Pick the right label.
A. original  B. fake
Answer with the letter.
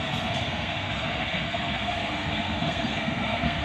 B